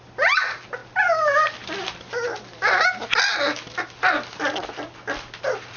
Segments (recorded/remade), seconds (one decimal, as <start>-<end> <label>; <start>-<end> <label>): 0.0-5.8 recorded

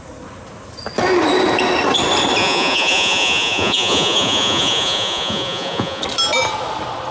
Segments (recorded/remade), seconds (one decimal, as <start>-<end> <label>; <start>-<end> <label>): 0.0-2.4 recorded; 2.4-6.0 remade; 6.0-7.1 recorded

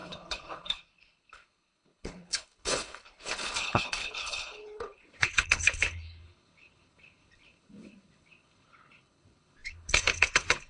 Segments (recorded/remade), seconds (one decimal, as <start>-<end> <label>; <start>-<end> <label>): 0.0-10.7 remade

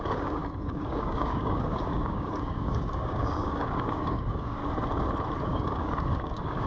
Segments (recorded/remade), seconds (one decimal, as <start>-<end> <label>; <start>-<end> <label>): 0.0-4.6 remade; 4.6-5.4 recorded; 5.4-6.7 remade

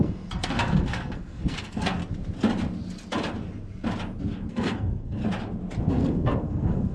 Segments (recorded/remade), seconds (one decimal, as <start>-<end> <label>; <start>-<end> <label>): 0.0-2.0 remade; 2.0-4.5 recorded; 4.5-5.2 remade; 5.2-5.9 recorded; 5.9-6.9 remade